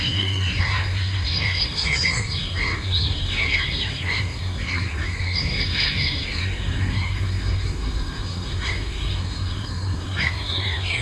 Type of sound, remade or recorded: remade